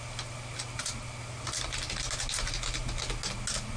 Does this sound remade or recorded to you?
recorded